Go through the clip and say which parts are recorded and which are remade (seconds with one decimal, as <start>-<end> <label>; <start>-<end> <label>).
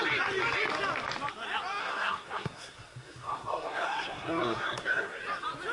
0.0-1.8 recorded; 1.8-5.2 remade; 5.2-5.7 recorded